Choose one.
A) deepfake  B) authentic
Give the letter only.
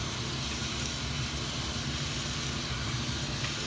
B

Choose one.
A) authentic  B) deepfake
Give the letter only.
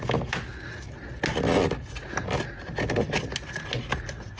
A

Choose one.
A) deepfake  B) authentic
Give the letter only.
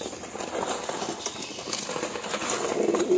B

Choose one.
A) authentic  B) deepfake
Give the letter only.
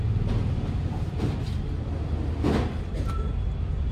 A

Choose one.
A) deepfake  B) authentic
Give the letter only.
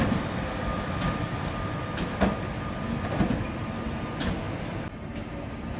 B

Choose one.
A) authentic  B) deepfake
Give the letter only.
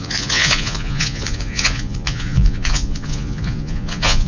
B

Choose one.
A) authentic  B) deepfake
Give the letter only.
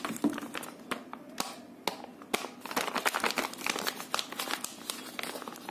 A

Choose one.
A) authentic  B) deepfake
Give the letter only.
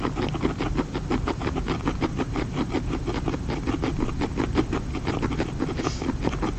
A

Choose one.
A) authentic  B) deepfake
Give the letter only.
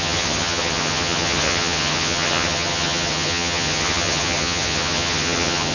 B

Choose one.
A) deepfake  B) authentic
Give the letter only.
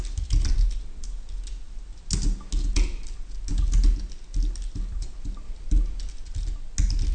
B